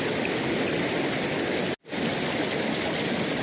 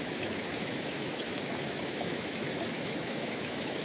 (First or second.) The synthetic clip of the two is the second